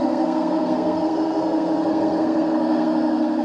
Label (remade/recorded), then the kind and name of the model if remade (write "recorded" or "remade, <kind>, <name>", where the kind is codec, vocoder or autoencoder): remade, codec, SNAC